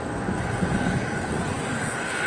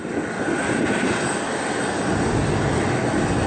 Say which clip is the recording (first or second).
second